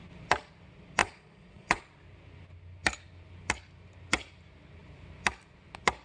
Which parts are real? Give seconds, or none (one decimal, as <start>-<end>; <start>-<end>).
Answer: 0.0-1.0; 1.8-6.0